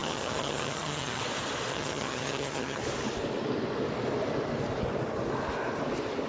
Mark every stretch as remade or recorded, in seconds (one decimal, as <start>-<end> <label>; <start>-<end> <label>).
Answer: 0.0-1.2 remade; 1.2-1.7 recorded; 1.7-2.8 remade; 2.8-6.3 recorded